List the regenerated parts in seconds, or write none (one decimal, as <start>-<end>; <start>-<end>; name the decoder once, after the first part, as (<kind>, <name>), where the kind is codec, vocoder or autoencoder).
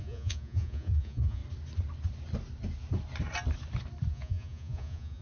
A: 0.0-1.4 (vocoder, Vocos); 4.1-5.2